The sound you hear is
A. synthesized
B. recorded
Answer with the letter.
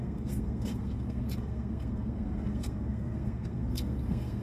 A